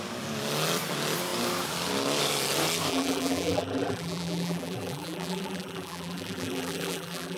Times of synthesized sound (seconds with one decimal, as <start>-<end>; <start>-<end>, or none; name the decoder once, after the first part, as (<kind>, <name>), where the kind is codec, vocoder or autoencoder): 2.9-7.4 (vocoder, BigVGAN v2)